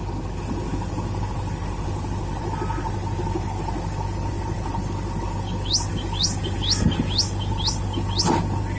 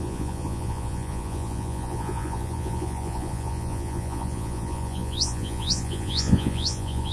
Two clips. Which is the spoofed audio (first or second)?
second